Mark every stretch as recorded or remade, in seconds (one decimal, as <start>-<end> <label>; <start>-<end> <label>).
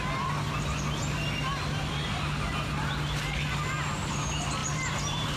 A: 0.0-4.6 recorded; 4.6-5.4 remade